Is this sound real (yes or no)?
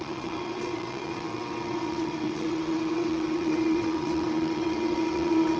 no